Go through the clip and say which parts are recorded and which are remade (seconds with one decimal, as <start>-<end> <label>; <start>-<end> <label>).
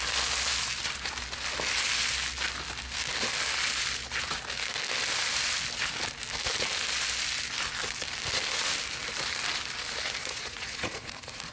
0.0-10.2 recorded; 10.2-11.5 remade